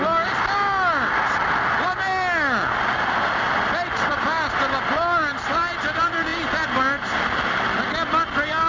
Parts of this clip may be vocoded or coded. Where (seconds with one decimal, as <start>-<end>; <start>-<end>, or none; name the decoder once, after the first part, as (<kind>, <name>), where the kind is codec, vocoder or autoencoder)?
none